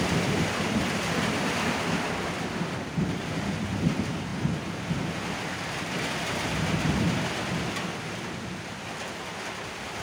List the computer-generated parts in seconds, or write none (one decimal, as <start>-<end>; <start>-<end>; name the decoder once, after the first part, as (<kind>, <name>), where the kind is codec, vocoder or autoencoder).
0.0-4.3 (vocoder, BigVGAN v2); 9.4-10.0